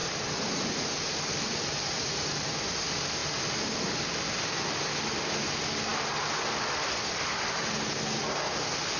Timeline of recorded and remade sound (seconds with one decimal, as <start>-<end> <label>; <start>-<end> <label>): 0.0-2.6 remade; 2.6-9.0 recorded